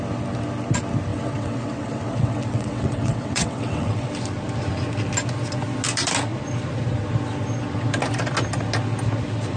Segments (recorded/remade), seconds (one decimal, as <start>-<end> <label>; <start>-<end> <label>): 0.0-1.1 recorded; 1.1-4.1 remade; 4.1-9.6 recorded